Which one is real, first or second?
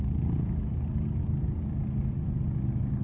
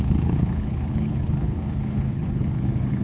first